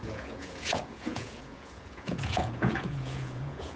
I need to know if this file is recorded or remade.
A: remade